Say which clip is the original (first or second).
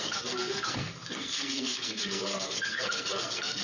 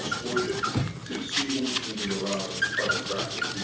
second